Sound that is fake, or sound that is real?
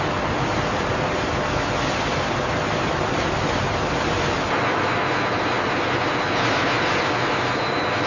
real